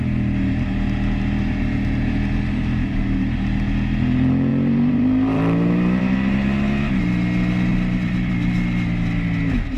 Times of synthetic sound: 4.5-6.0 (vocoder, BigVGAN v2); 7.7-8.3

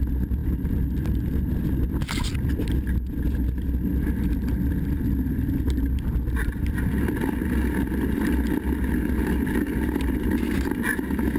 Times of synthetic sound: none

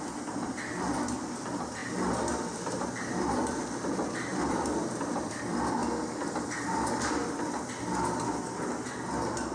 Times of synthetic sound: 0.0-5.8 (vocoder, BigVGAN v2); 8.6-9.5

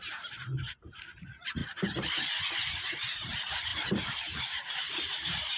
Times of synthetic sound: 0.0-1.6 (vocoder, BigVGAN v2); 2.6-5.6